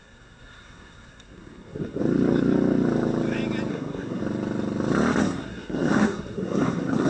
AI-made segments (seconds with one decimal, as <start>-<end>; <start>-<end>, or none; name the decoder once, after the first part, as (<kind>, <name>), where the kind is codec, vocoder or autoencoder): 0.0-2.0 (codec, SNAC); 3.7-4.2; 5.2-7.1